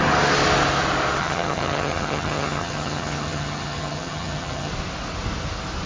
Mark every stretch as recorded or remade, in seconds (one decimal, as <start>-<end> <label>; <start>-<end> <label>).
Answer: 0.0-1.2 recorded; 1.2-4.7 remade; 4.7-5.9 recorded

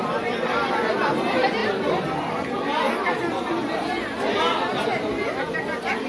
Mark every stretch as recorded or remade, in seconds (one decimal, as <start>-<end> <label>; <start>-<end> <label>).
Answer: 0.0-6.1 recorded

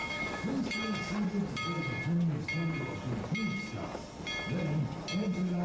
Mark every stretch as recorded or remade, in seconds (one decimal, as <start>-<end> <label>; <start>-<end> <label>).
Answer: 0.0-0.6 remade; 0.6-5.6 recorded